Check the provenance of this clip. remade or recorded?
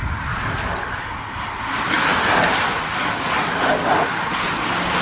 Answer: recorded